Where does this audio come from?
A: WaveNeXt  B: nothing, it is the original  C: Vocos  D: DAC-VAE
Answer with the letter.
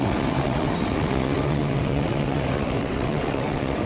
A